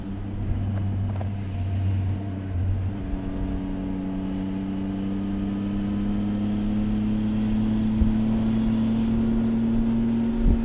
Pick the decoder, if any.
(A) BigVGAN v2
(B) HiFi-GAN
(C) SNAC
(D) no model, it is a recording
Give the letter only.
D